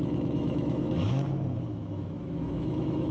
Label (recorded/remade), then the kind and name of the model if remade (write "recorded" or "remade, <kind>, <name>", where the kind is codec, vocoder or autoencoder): remade, autoencoder, DAC-VAE